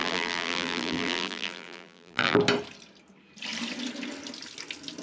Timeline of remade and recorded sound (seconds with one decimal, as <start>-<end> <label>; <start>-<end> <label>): 0.0-2.4 remade; 2.4-5.0 recorded